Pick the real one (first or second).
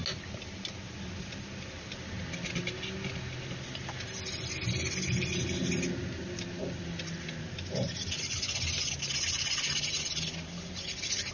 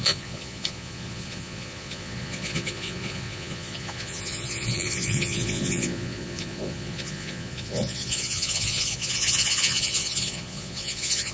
first